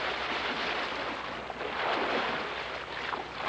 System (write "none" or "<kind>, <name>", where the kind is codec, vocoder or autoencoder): none